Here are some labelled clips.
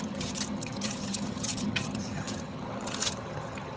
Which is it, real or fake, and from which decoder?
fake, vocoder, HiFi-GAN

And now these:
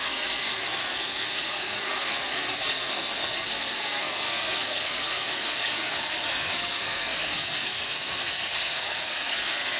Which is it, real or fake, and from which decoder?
fake, codec, SNAC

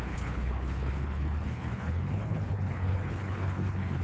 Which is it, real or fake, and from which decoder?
fake, codec, HILCodec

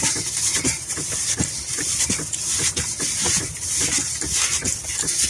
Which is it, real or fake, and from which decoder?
real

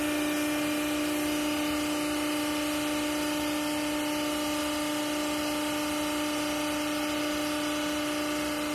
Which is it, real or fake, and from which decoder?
real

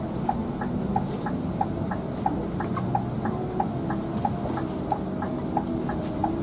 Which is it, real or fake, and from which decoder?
real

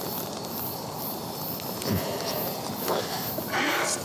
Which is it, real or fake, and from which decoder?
real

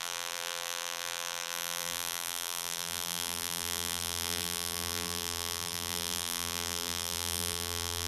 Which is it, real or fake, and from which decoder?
fake, vocoder, BigVGAN v2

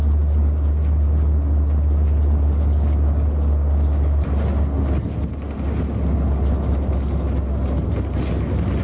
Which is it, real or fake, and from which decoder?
real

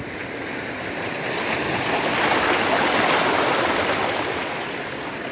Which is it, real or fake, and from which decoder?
real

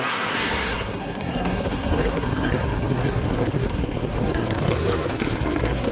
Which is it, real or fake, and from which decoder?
fake, codec, SNAC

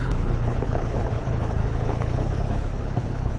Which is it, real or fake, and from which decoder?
fake, codec, HILCodec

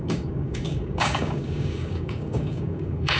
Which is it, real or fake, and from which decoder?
fake, codec, DAC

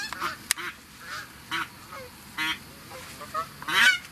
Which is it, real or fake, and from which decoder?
real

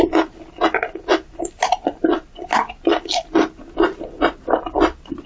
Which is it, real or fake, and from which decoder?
real